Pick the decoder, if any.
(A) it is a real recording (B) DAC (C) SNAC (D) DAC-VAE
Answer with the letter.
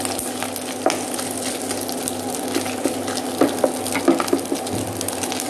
A